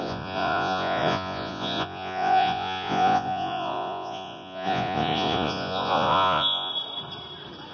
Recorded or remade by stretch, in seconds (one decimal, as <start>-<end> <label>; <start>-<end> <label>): 0.0-6.7 remade; 6.7-7.7 recorded